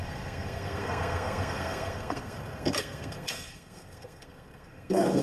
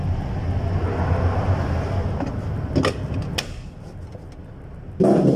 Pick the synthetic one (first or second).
first